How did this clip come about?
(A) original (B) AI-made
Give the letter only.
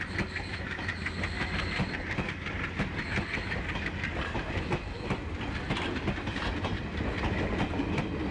A